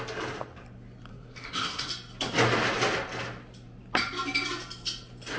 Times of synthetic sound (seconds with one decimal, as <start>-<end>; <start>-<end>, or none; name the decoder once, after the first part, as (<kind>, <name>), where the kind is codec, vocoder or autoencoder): 1.1-1.9 (codec, SNAC)